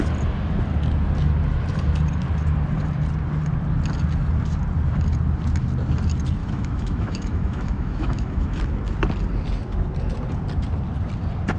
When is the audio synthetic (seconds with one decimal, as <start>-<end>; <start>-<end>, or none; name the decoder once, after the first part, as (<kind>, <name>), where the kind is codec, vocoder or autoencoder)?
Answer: 6.4-8.6 (autoencoder, DAC-VAE)

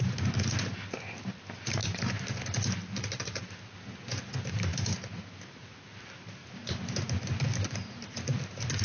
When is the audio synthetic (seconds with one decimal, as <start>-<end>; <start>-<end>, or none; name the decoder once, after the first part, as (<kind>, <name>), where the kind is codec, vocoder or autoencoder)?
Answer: 1.8-3.4 (vocoder, BigVGAN v2); 4.7-5.2; 6.4-8.8

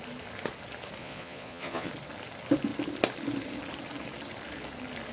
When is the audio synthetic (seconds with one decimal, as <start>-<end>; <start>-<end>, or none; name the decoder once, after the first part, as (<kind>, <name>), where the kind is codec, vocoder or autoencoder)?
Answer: 1.0-1.9 (vocoder, Vocos)

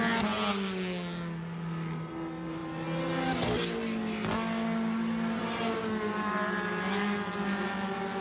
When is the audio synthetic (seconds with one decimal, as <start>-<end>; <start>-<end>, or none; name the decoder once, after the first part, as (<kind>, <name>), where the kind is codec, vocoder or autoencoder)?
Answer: none

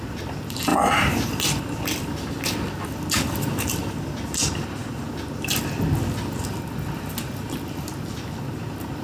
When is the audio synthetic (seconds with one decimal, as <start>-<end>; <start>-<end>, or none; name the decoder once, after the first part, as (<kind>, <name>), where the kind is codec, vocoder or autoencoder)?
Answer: none

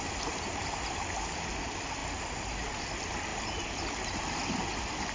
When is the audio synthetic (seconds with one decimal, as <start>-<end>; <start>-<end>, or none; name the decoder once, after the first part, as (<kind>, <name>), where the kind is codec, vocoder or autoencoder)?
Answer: none

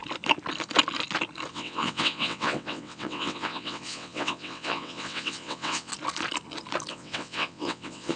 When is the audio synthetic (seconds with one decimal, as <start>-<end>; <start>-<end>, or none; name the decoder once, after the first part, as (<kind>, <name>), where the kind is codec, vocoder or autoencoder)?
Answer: 1.5-5.9 (vocoder, WaveNeXt); 6.9-8.2

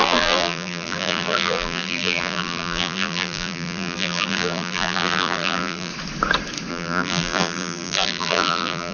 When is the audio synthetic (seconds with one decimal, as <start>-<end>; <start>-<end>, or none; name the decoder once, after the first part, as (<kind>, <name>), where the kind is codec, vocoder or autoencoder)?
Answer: 0.0-5.9 (vocoder, BigVGAN v2); 6.7-8.9